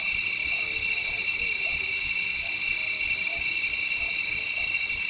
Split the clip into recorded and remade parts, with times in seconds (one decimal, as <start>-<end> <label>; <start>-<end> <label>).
0.0-5.1 recorded